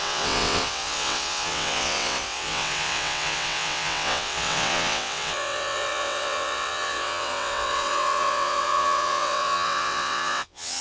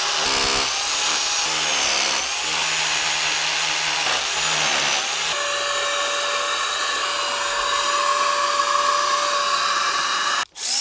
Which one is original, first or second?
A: second